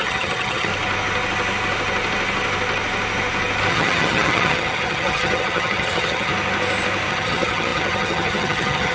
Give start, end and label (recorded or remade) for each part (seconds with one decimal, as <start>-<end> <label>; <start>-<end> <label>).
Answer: 0.0-0.7 remade; 0.7-3.7 recorded; 3.7-6.3 remade; 6.3-7.1 recorded; 7.1-8.9 remade